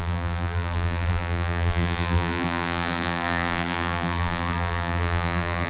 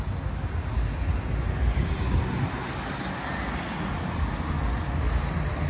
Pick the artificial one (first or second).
first